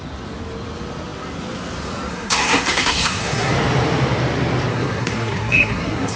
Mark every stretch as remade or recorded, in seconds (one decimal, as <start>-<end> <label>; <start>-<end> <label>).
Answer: 0.0-2.1 recorded; 2.1-3.5 remade; 3.5-4.7 recorded; 4.7-6.2 remade